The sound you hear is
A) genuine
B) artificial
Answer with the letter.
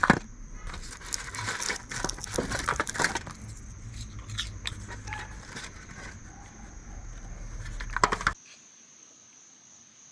A